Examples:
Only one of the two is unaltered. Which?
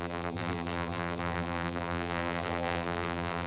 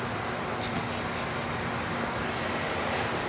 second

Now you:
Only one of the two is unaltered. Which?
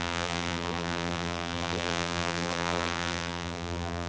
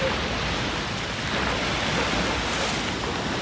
second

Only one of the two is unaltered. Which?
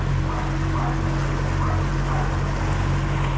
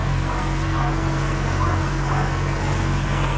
first